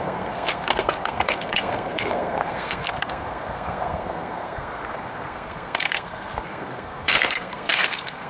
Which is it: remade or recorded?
remade